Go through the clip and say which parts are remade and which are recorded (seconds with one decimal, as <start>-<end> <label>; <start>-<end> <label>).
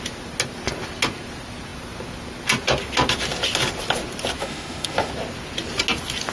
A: 0.0-4.4 recorded; 4.4-5.1 remade; 5.1-6.3 recorded